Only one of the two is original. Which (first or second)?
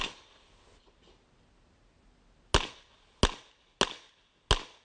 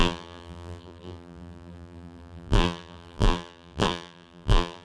first